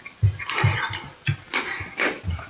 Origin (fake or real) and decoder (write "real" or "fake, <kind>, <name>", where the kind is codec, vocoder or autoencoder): real